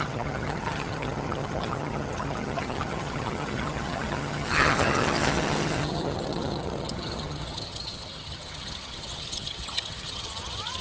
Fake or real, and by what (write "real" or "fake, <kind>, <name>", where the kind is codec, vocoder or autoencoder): fake, vocoder, HiFi-GAN